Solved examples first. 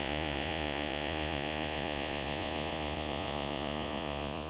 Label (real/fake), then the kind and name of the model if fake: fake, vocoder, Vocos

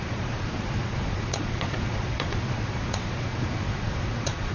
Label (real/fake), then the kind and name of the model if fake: fake, vocoder, Vocos